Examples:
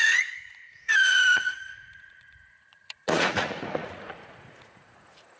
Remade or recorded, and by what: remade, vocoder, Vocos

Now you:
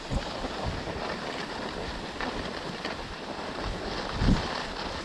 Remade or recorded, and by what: recorded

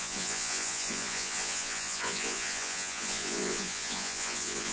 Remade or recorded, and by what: remade, vocoder, Vocos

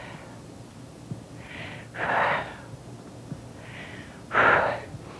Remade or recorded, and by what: recorded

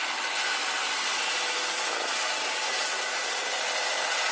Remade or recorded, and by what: recorded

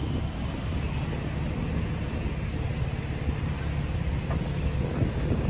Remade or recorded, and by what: recorded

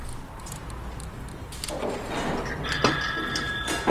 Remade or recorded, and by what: recorded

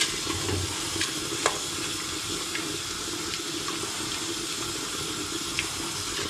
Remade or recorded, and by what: recorded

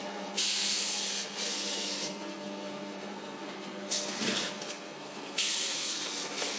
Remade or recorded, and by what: remade, codec, SNAC